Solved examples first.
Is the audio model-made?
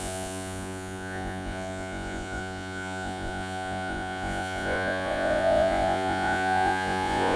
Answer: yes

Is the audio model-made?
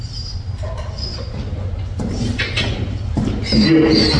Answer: no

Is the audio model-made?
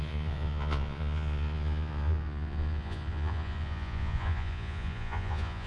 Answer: yes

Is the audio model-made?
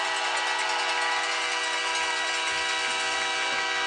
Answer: no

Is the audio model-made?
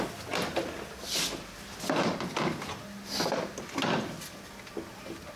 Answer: no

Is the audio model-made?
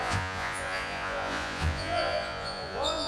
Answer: yes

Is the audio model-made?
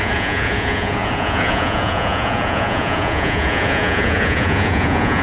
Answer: yes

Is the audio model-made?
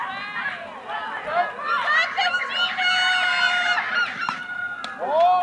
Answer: no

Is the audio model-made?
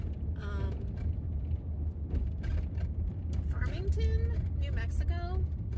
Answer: no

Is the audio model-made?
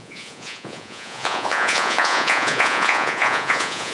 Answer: yes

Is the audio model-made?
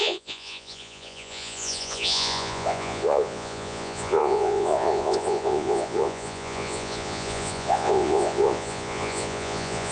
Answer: yes